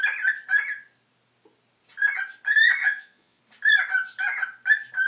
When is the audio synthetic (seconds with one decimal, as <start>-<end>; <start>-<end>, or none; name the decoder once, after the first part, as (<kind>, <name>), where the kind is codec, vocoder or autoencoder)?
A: 2.8-3.4 (vocoder, Vocos)